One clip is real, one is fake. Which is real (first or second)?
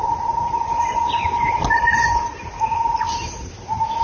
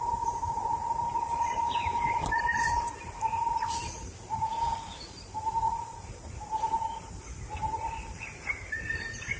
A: first